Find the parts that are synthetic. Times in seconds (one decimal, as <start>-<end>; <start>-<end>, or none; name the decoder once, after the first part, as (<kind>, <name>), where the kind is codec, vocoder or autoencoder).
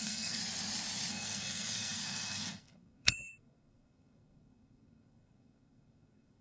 0.0-0.4 (codec, SNAC); 1.1-6.4